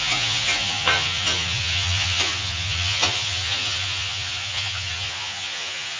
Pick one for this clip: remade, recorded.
remade